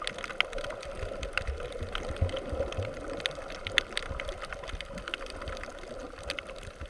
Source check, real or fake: real